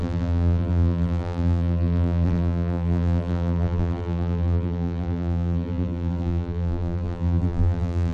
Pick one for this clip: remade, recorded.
remade